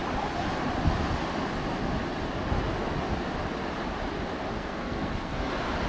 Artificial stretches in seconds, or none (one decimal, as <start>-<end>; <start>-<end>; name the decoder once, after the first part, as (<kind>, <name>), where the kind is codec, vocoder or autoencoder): 4.5-5.5 (codec, SNAC)